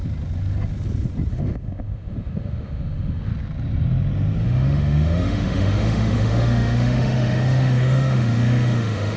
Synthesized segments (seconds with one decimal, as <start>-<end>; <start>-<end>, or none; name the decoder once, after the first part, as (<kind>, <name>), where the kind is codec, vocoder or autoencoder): 1.3-3.3 (autoencoder, DAC-VAE); 4.4-9.2